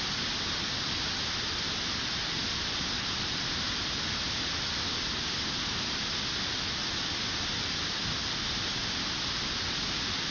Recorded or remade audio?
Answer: recorded